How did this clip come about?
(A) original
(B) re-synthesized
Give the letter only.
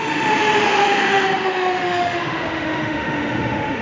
B